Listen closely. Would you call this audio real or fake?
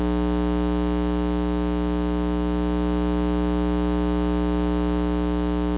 real